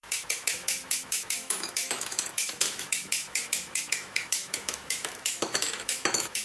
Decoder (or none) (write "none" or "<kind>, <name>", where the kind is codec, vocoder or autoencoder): autoencoder, DAC-VAE